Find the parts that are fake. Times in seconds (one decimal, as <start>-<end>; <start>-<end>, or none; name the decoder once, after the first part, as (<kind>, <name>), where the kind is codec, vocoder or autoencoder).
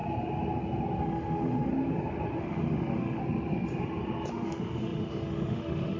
1.0-1.7 (autoencoder, DAC-VAE); 2.4-3.2; 4.3-6.0